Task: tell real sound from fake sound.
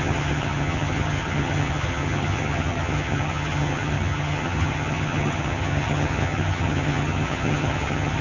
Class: fake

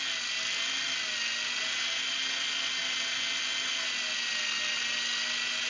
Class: real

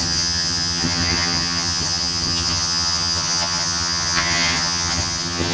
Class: fake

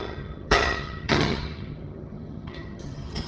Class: fake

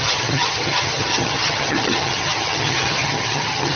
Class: fake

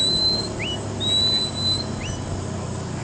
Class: real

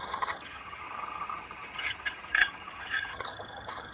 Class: fake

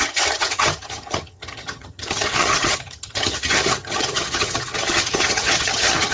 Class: fake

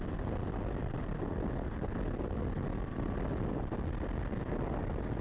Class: real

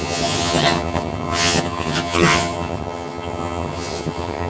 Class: fake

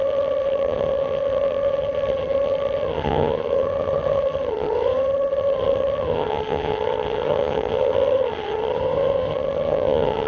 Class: fake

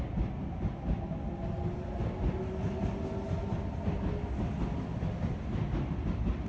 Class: real